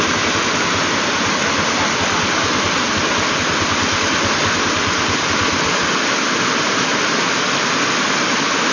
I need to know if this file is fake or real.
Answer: real